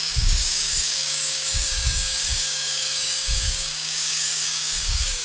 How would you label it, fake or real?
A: fake